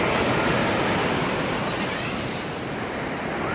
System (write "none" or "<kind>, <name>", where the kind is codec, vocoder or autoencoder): none